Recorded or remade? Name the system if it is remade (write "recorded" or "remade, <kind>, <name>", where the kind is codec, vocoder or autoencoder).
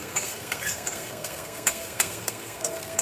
remade, codec, SNAC